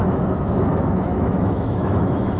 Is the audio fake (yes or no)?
yes